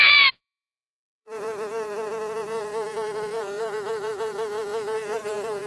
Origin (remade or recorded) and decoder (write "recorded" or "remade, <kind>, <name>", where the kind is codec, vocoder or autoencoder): remade, vocoder, Vocos